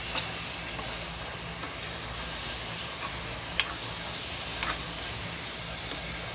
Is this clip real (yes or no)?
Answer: yes